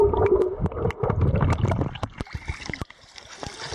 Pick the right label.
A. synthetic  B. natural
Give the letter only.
B